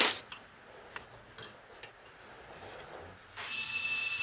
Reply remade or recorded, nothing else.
recorded